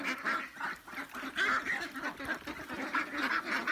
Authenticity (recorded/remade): recorded